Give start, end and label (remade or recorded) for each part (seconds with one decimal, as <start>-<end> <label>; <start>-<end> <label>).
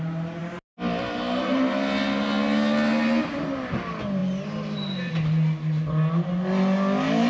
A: 0.0-7.3 recorded